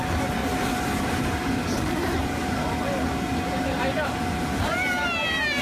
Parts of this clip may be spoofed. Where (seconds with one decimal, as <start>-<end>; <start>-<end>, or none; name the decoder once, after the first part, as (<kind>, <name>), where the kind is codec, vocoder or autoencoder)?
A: none